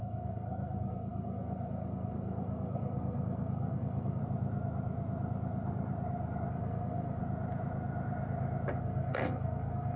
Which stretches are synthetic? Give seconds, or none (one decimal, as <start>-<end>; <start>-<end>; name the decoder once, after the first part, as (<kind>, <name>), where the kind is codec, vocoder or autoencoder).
0.0-4.2 (codec, SNAC); 6.5-7.2; 8.8-10.0